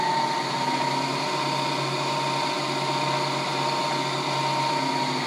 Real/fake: real